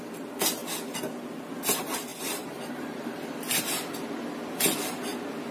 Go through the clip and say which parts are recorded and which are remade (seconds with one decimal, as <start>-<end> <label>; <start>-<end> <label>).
0.0-2.1 recorded; 2.1-3.6 remade; 3.6-5.5 recorded